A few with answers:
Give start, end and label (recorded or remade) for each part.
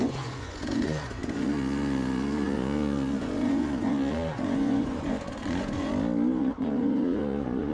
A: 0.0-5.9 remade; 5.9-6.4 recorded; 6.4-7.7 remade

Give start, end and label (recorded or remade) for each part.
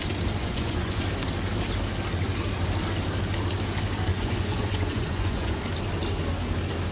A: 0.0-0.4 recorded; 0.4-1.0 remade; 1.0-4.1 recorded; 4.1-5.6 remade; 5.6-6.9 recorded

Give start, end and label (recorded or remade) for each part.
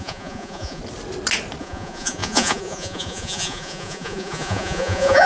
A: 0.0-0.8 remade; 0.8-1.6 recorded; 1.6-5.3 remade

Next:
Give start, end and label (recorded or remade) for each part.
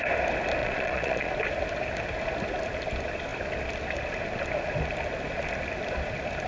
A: 0.0-0.6 recorded; 0.6-1.3 remade; 1.3-6.5 recorded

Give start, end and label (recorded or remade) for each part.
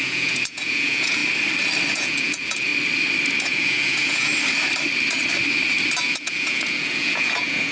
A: 0.0-1.2 remade; 1.2-1.9 recorded; 1.9-2.7 remade; 2.7-3.4 recorded; 3.4-4.3 remade; 4.3-6.0 recorded; 6.0-7.7 remade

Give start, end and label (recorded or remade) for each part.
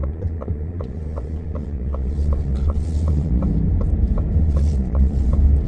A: 0.0-3.4 remade; 3.4-4.4 recorded; 4.4-5.3 remade; 5.3-5.7 recorded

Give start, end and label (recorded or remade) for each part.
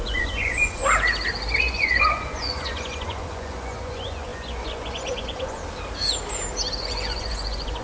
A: 0.0-0.8 remade; 0.8-1.6 recorded; 1.6-5.6 remade; 5.6-6.8 recorded; 6.8-7.8 remade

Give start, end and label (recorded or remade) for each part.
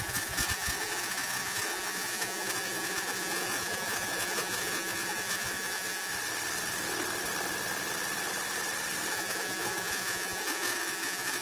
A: 0.0-6.1 remade; 6.1-9.1 recorded; 9.1-11.4 remade